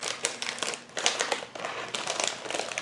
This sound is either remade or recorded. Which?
recorded